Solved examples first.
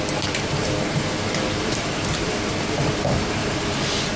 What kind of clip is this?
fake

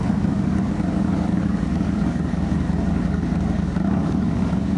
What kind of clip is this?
fake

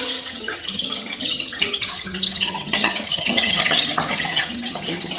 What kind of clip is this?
fake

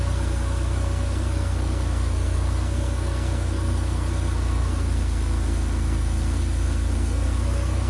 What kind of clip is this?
fake